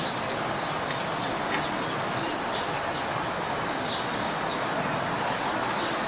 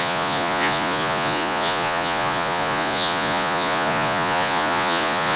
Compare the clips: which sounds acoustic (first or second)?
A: first